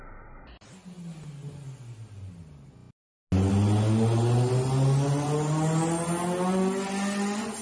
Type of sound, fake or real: real